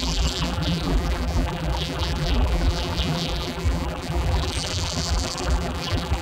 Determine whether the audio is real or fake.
fake